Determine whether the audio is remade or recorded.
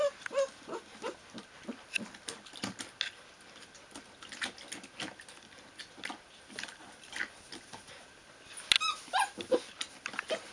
recorded